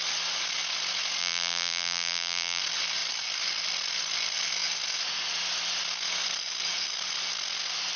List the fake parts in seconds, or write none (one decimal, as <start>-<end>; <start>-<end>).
1.2-2.6